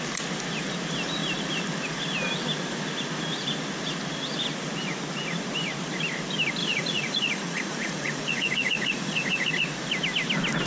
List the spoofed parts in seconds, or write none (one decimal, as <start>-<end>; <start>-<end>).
6.6-9.5